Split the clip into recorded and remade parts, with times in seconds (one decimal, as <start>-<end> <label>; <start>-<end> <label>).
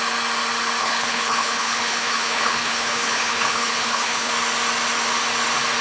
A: 0.0-0.8 recorded; 0.8-4.3 remade; 4.3-5.8 recorded